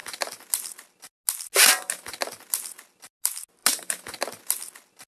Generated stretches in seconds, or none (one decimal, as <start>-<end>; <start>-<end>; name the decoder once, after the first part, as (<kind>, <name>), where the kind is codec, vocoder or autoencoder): none